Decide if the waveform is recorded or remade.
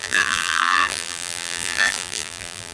remade